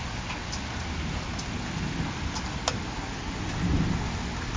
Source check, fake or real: real